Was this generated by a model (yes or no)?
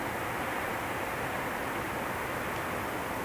no